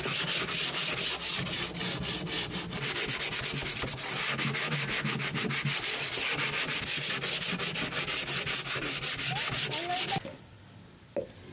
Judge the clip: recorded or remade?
recorded